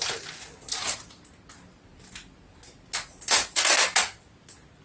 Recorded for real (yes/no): yes